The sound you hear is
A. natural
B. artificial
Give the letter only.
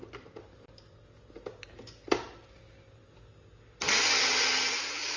A